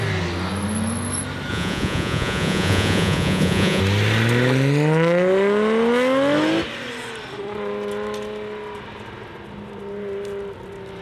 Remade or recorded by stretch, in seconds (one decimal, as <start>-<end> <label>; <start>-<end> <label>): 0.0-1.5 recorded; 1.5-3.8 remade; 3.8-11.0 recorded